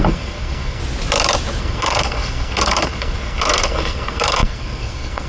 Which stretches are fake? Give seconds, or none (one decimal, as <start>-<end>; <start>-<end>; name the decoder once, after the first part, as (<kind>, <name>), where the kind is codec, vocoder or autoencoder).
0.0-0.8 (codec, SNAC); 1.6-5.3